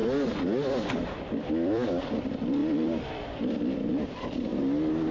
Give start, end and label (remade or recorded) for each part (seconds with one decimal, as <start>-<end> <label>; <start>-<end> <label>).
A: 0.0-0.7 recorded; 0.7-4.5 remade; 4.5-5.1 recorded